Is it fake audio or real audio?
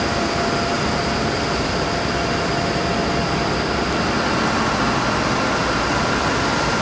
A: real